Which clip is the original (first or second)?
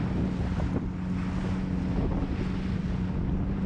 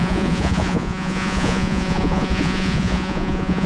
first